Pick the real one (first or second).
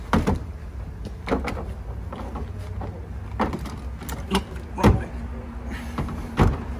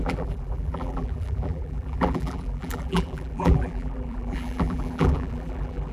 first